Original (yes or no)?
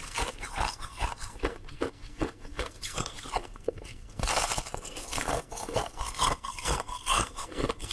no